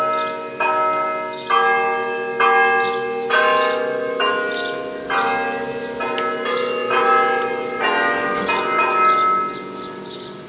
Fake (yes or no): no